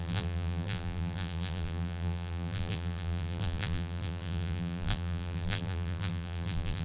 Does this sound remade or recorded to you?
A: remade